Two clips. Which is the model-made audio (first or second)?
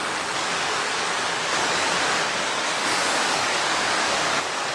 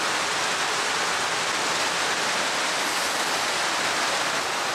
first